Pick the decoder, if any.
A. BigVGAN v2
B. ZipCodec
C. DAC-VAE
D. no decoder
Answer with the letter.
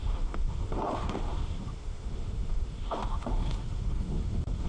C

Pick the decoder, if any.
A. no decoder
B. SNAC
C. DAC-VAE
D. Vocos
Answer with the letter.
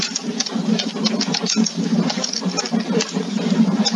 A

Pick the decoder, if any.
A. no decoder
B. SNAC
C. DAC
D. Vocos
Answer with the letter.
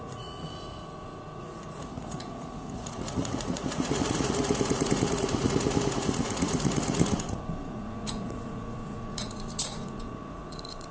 D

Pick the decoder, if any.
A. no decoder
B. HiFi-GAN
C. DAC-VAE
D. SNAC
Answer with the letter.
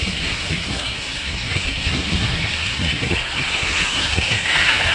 D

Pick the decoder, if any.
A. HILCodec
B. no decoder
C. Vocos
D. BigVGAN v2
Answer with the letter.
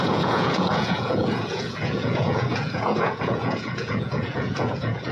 C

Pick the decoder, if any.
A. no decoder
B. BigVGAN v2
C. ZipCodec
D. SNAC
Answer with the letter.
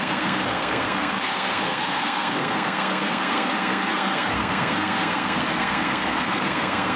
D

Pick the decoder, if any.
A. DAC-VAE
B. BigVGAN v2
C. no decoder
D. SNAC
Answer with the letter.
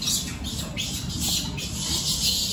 C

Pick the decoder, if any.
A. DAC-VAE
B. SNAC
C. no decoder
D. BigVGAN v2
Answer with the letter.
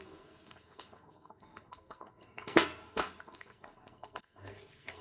B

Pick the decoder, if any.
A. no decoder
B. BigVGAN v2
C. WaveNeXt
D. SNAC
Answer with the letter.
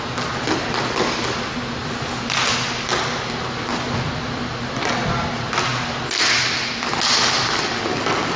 A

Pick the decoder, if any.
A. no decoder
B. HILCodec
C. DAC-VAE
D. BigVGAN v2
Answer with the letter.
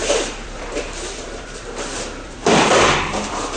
D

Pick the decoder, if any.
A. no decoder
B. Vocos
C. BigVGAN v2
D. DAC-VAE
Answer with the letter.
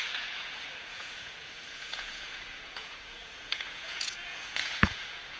B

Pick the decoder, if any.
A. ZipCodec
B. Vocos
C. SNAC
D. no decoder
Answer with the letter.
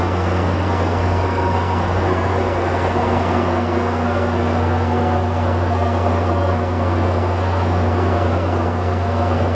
C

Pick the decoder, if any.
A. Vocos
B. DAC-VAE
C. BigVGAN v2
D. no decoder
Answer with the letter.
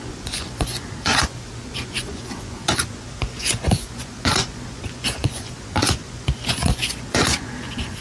A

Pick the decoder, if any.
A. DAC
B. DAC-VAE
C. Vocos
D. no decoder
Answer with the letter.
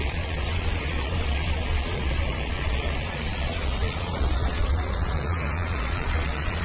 C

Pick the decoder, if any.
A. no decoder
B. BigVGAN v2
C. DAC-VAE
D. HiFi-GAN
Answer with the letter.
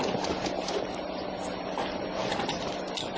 A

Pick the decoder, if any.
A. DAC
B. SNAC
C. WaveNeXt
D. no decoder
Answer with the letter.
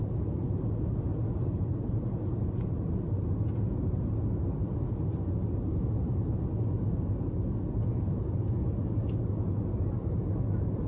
D